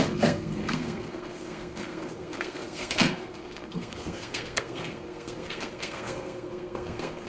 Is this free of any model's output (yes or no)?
no